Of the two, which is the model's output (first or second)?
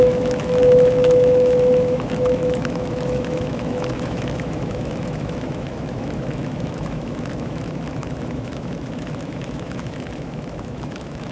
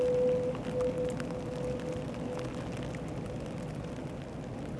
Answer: first